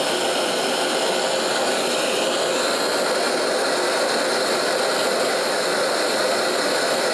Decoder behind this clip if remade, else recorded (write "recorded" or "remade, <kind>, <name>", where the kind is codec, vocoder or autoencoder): recorded